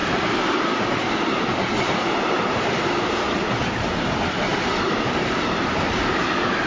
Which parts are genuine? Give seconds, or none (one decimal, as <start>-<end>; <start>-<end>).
3.9-4.5; 5.4-6.7